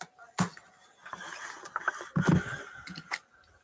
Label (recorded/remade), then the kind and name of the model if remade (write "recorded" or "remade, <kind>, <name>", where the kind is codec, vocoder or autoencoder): recorded